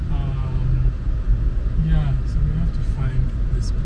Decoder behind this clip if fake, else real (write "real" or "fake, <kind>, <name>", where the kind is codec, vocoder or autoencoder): real